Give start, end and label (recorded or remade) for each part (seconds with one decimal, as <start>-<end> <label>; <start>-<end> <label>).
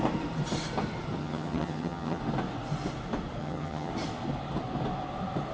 0.0-1.2 recorded; 1.2-2.2 remade; 2.2-3.4 recorded; 3.4-3.9 remade; 3.9-5.5 recorded